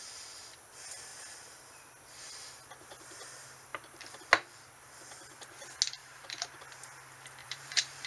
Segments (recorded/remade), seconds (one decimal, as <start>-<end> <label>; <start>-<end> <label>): 0.0-3.7 recorded; 3.7-4.2 remade; 4.2-6.0 recorded; 6.0-6.6 remade; 6.6-7.4 recorded; 7.4-8.1 remade